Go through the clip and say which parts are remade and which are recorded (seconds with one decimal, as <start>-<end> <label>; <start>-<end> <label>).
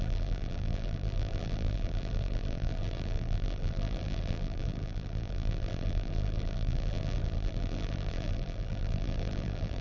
0.0-9.8 remade